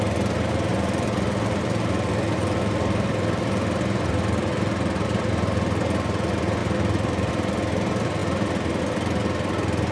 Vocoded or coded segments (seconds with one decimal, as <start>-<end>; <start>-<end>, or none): 0.7-5.3; 6.6-7.3; 8.2-8.8